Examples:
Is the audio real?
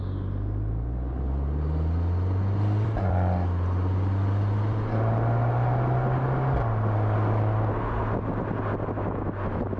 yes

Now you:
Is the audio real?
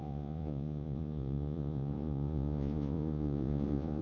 no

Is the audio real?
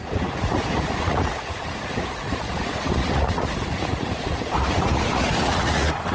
no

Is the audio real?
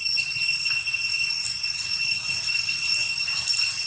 yes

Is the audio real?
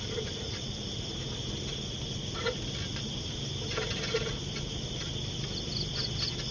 yes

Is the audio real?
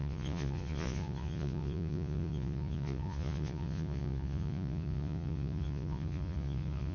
no